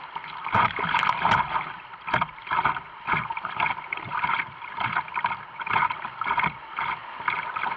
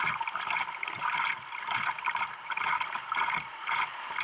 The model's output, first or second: first